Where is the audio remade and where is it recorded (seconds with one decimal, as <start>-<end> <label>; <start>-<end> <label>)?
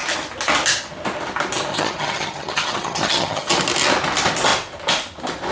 0.0-1.7 recorded; 1.7-3.5 remade; 3.5-5.5 recorded